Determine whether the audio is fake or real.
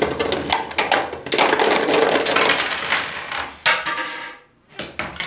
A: real